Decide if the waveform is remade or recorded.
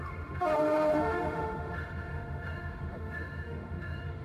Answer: remade